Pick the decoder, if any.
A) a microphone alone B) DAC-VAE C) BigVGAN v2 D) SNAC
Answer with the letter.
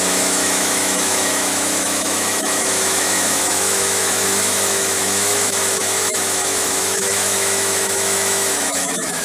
B